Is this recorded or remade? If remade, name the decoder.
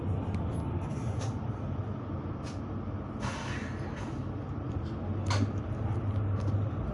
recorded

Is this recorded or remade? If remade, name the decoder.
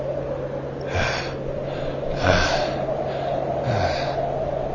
recorded